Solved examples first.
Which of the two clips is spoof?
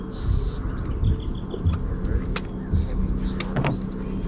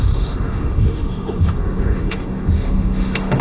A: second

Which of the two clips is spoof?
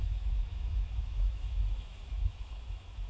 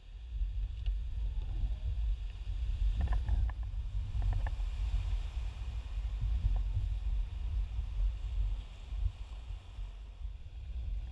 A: first